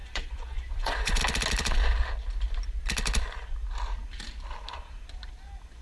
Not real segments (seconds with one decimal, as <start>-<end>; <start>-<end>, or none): 0.0-1.2